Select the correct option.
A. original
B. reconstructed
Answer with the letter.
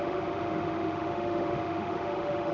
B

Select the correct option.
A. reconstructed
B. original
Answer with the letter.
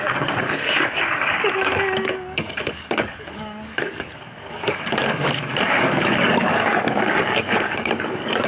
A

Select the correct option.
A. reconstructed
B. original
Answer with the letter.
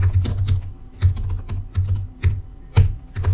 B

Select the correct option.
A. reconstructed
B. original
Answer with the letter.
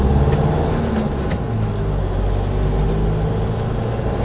B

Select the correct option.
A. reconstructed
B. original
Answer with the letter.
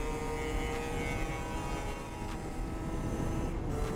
B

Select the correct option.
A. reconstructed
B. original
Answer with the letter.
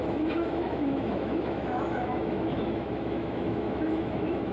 A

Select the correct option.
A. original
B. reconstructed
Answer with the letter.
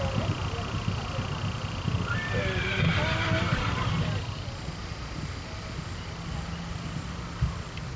A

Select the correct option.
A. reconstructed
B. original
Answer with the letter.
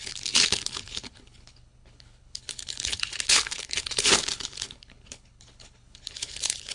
A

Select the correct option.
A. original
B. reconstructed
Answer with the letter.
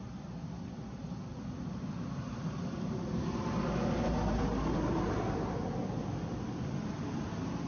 A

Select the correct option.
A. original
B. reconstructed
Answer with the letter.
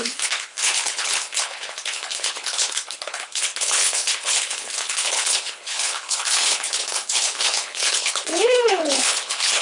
B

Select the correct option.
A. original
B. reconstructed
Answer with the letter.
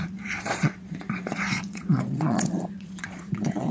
B